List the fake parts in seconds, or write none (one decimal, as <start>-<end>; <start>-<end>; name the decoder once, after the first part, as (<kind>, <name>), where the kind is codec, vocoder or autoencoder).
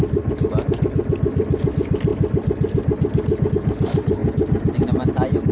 none